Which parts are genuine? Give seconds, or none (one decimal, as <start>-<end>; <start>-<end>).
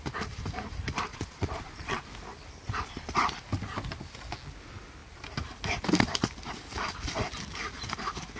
0.0-1.1; 2.0-8.4